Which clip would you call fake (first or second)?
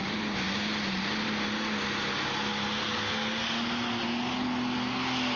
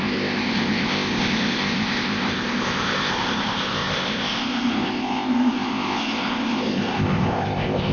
second